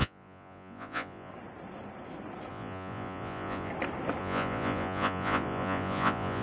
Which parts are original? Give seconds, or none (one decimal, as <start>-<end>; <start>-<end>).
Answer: 1.3-2.5; 3.7-4.2